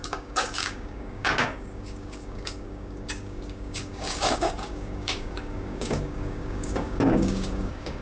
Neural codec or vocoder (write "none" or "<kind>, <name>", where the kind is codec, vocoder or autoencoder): codec, DAC